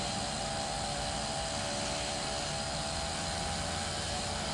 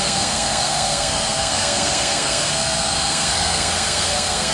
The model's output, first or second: second